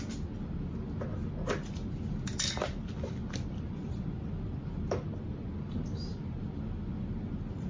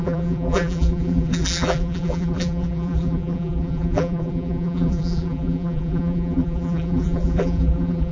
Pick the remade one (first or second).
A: second